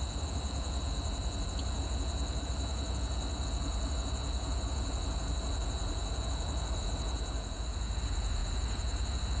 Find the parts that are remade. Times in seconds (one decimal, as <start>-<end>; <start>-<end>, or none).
0.0-9.4